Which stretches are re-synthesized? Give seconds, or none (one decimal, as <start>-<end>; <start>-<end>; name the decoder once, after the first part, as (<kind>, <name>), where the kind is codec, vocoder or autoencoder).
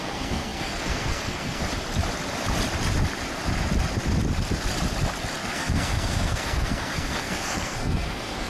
0.0-1.6 (codec, SNAC); 5.5-8.5